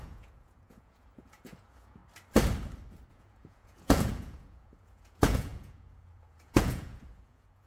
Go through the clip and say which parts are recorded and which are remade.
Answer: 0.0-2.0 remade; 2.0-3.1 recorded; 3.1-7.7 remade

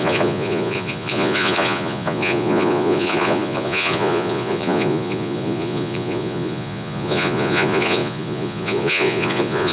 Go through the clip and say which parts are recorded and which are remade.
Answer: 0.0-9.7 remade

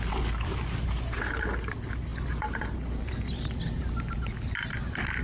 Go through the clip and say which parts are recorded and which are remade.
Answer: 0.0-5.2 recorded

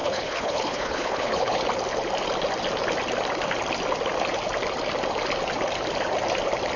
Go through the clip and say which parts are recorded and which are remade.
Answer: 0.0-1.6 remade; 1.6-6.8 recorded

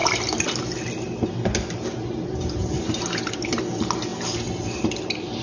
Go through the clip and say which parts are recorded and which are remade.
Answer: 0.0-5.4 recorded

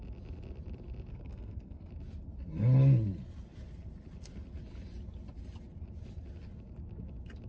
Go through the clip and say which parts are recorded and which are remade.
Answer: 0.0-1.1 recorded; 1.1-1.9 remade; 1.9-7.5 recorded

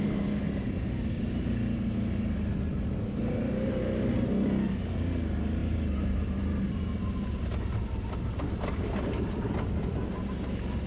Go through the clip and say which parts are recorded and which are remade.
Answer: 0.0-5.6 recorded; 5.6-9.5 remade; 9.5-10.9 recorded